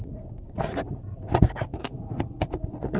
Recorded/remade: remade